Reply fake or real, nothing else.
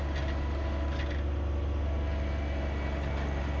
real